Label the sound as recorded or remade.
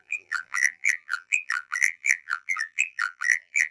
remade